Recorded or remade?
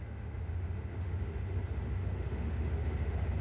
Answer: remade